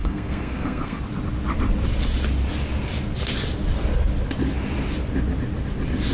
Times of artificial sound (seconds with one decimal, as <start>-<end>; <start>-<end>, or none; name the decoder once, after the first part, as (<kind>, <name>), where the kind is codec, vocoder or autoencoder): 0.0-1.0 (codec, SNAC)